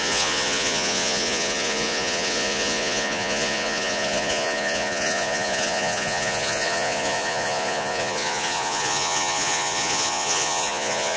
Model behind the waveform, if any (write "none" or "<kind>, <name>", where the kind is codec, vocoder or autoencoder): vocoder, Vocos